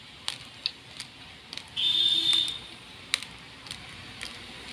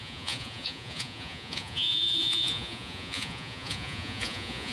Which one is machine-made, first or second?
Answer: second